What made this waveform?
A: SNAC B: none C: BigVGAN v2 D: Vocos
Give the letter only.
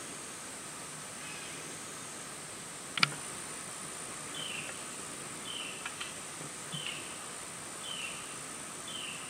B